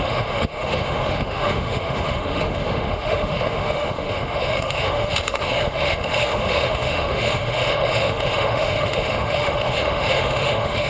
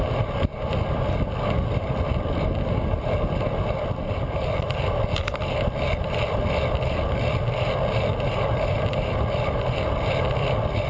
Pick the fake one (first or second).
first